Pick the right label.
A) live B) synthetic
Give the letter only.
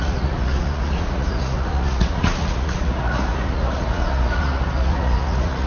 B